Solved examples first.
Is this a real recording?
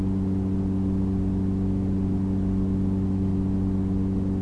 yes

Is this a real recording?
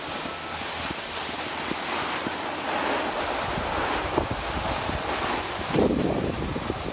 yes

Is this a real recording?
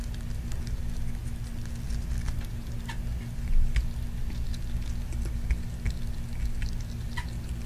yes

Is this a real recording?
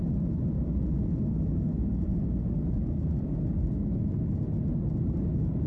yes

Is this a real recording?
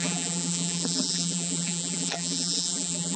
no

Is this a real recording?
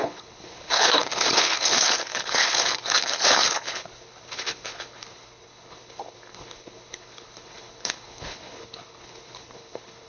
no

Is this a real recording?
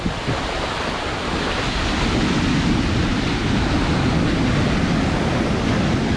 yes